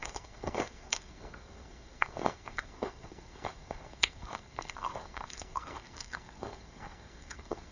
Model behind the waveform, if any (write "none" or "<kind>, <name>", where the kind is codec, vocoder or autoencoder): codec, SNAC